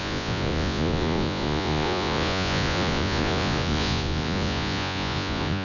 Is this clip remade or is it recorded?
remade